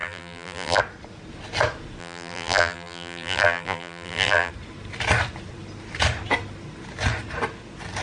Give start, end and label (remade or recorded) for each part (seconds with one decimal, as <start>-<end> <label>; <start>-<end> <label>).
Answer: 0.0-0.8 remade; 0.8-2.0 recorded; 2.0-4.5 remade; 4.5-8.0 recorded